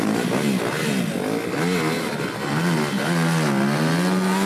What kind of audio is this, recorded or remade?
recorded